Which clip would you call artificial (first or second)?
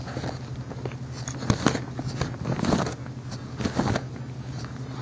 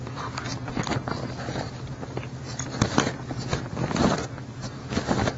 second